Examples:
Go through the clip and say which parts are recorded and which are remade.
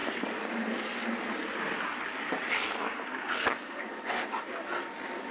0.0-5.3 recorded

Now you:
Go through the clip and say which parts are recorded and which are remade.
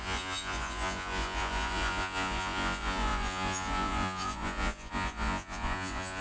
0.0-6.2 remade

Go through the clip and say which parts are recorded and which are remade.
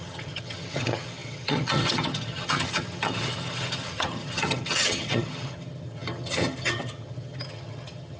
0.0-8.2 remade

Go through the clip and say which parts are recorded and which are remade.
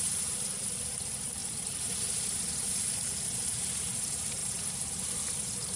0.0-5.8 recorded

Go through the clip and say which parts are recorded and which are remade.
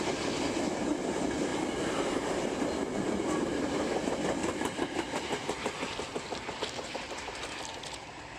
0.0-4.4 remade; 4.4-6.5 recorded; 6.5-8.4 remade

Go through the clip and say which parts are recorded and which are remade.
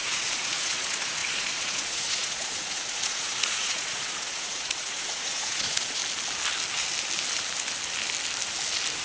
0.0-6.0 remade; 6.0-9.0 recorded